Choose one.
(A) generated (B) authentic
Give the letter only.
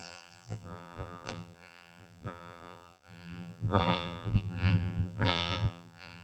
A